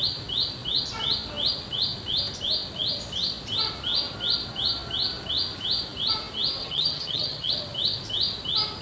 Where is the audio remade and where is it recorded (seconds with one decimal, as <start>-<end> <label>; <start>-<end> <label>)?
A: 0.0-6.6 recorded; 6.6-7.5 remade; 7.5-8.8 recorded